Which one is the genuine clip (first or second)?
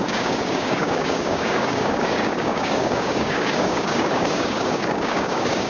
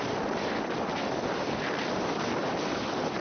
second